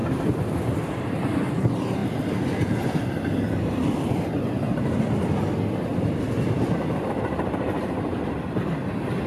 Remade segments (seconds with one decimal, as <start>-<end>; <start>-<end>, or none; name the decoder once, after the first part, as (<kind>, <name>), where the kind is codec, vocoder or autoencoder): 0.0-1.5 (vocoder, BigVGAN v2); 2.0-4.5; 5.9-9.3